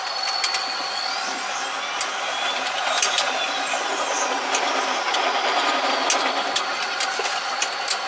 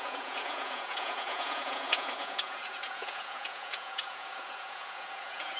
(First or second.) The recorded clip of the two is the first